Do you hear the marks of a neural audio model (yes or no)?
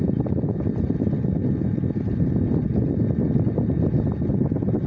no